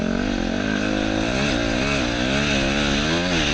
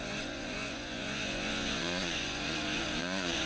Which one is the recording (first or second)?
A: first